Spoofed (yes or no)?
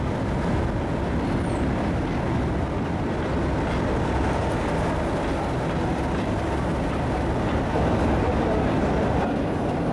no